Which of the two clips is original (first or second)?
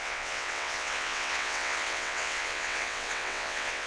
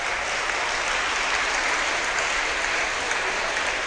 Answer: second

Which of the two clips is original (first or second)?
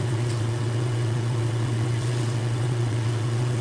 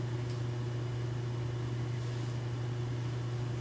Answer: second